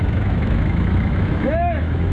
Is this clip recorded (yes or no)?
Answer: no